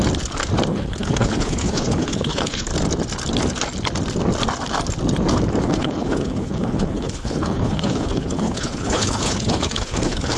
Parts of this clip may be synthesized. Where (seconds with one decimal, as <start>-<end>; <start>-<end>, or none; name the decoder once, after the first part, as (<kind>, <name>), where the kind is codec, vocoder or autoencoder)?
0.7-2.7 (codec, HILCodec); 5.6-10.4